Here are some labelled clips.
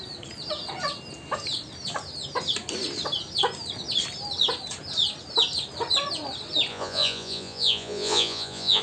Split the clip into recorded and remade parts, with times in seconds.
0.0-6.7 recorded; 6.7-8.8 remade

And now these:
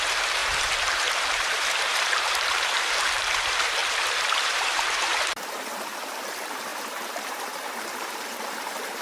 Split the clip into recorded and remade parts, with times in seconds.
0.0-9.0 remade

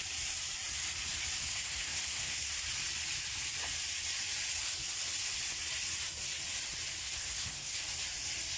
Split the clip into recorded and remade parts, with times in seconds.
0.0-1.5 recorded; 1.5-2.5 remade; 2.5-7.0 recorded; 7.0-7.8 remade; 7.8-8.6 recorded

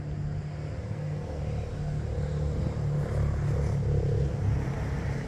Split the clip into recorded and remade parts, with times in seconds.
0.0-0.8 recorded; 0.8-1.4 remade; 1.4-5.3 recorded

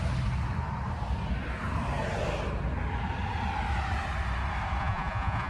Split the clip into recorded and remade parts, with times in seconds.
0.0-4.8 recorded; 4.8-5.5 remade

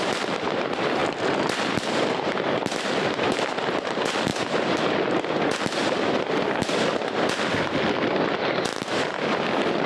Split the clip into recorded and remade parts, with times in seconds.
0.0-9.9 recorded